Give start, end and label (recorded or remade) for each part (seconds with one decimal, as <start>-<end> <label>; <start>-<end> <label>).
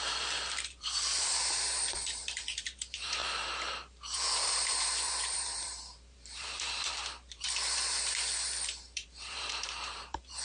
0.0-10.4 remade